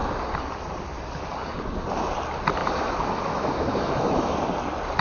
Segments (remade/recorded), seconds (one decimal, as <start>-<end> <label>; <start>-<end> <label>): 0.0-2.6 recorded; 2.6-4.3 remade; 4.3-5.0 recorded